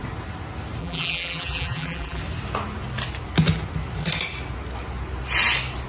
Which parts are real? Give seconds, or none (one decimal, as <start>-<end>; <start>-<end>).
0.0-0.8; 2.2-5.9